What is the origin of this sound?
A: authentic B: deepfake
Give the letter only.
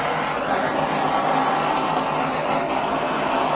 A